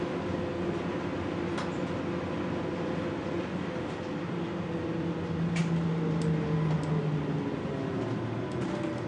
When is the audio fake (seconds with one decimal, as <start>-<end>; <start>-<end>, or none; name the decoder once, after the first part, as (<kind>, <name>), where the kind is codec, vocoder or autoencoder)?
none